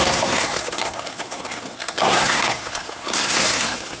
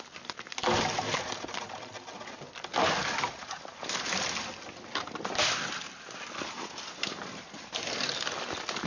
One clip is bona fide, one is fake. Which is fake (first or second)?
first